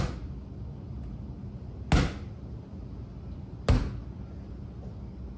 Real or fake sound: real